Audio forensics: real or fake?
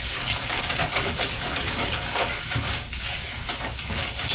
fake